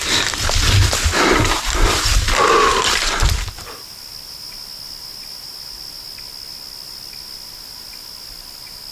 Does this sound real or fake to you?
real